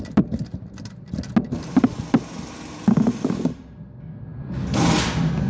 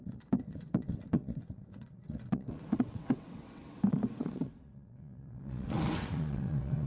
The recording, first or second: first